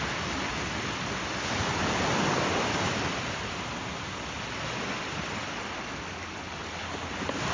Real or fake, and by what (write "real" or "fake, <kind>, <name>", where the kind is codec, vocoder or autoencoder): real